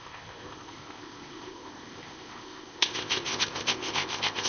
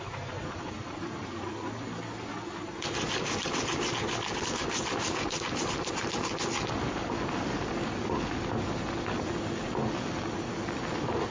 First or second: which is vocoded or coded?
first